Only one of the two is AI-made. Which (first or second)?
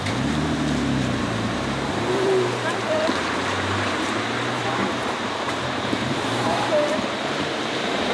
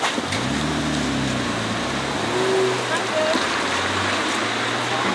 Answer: first